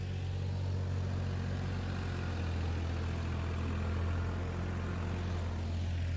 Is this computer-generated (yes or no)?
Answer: no